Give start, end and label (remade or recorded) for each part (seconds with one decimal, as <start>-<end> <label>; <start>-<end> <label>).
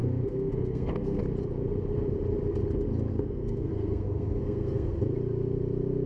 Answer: 0.0-1.2 remade; 1.2-3.1 recorded; 3.1-4.9 remade; 4.9-6.1 recorded